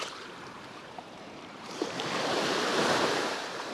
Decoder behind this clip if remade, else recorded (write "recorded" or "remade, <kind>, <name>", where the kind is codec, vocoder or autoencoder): remade, vocoder, BigVGAN v2